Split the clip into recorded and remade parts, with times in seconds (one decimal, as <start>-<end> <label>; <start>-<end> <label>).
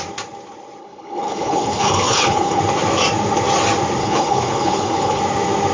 0.0-0.8 recorded; 0.8-2.6 remade; 2.6-4.0 recorded; 4.0-5.2 remade; 5.2-5.7 recorded